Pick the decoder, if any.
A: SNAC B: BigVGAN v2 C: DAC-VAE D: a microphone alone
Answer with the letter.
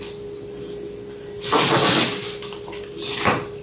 D